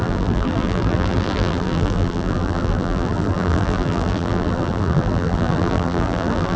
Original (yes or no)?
no